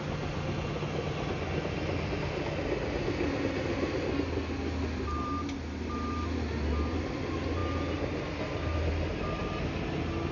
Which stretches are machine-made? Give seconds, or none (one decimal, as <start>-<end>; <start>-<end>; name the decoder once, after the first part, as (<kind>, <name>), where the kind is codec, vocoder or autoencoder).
none